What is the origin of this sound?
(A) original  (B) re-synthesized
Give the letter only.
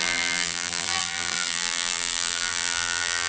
B